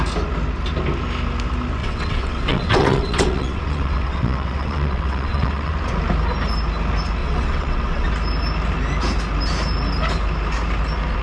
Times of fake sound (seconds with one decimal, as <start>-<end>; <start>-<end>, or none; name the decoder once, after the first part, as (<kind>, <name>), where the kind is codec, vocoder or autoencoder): 1.8-5.7 (vocoder, WaveNeXt); 7.2-8.1